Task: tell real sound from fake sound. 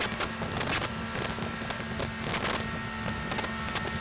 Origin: real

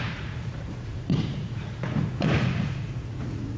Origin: fake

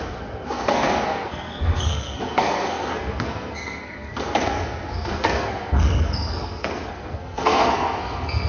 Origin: fake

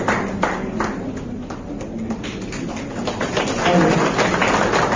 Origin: real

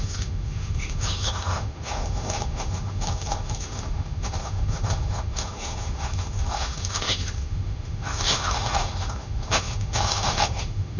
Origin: fake